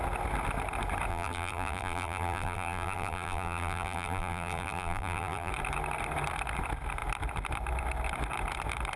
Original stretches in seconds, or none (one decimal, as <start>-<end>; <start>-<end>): 0.0-1.1; 5.5-9.0